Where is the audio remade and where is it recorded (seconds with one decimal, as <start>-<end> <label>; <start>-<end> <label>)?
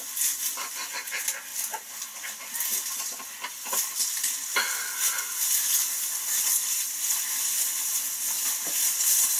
0.0-9.4 recorded